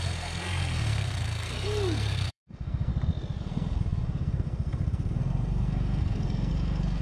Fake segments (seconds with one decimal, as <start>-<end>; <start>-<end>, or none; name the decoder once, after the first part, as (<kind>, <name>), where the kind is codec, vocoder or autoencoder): 0.0-2.9 (codec, SNAC); 3.4-7.0